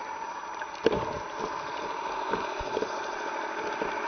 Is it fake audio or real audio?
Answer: real